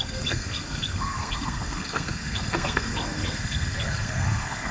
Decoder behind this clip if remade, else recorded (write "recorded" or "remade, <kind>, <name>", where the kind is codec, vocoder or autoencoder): remade, codec, SNAC